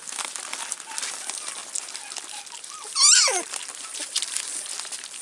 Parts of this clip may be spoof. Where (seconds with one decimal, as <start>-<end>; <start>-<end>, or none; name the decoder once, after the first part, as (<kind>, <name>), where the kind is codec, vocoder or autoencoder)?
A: none